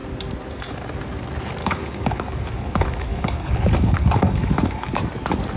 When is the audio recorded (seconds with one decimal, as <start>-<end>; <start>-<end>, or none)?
0.0-1.6; 5.0-5.6